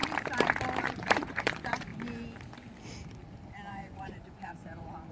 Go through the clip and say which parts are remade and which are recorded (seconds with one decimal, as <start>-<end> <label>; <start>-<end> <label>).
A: 0.0-0.8 recorded; 0.8-1.9 remade; 1.9-3.7 recorded; 3.7-5.1 remade